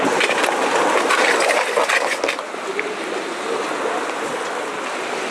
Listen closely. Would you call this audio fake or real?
real